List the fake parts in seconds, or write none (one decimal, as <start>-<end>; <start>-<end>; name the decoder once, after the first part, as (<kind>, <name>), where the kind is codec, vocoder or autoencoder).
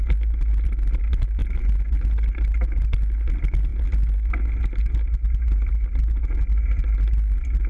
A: none